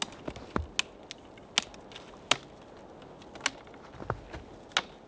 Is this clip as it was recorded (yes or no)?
yes